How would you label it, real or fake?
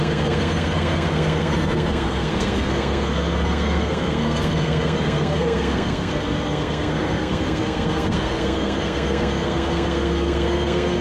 fake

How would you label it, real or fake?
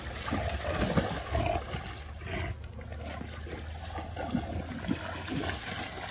real